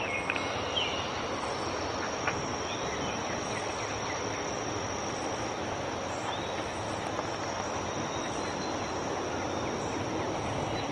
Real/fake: real